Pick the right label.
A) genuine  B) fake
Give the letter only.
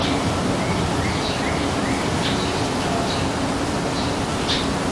A